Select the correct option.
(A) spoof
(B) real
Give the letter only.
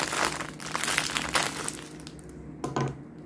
B